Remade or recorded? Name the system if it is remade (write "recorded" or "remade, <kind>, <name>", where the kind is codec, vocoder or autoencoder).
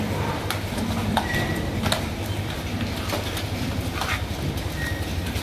recorded